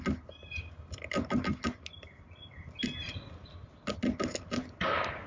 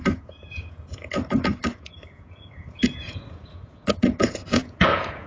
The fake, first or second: second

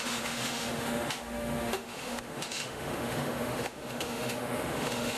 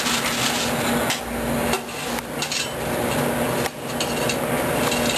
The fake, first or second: first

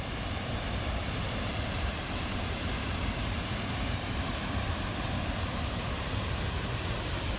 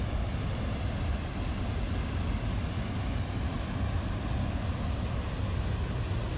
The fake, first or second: first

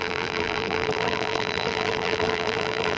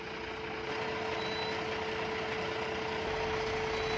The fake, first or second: first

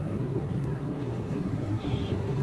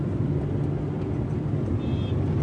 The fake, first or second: first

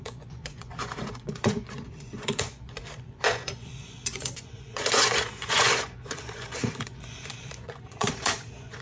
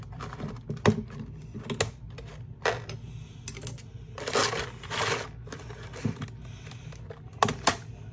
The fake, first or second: first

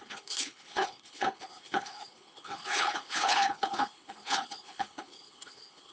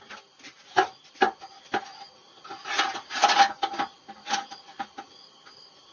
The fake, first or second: first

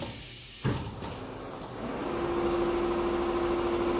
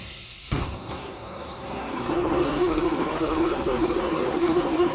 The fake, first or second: second